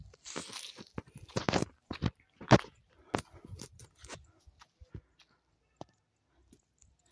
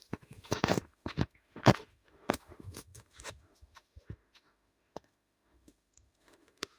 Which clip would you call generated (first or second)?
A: second